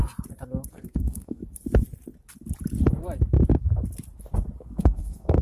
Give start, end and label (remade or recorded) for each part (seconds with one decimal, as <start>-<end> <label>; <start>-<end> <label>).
0.0-0.7 recorded; 0.7-1.4 remade; 1.4-4.6 recorded; 4.6-5.4 remade